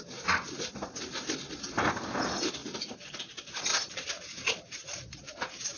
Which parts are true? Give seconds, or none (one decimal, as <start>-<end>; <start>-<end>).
0.0-3.7